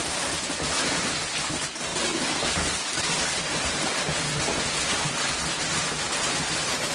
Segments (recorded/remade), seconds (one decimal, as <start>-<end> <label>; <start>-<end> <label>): 0.0-6.9 recorded